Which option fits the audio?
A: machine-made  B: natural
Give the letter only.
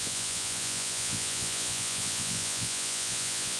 A